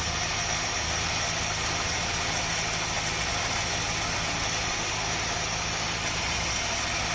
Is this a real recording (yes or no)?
yes